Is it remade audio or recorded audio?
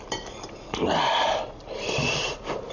recorded